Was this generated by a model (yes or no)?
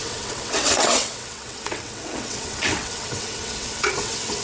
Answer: yes